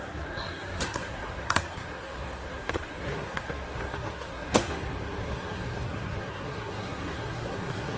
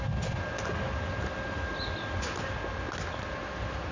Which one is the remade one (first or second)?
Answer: first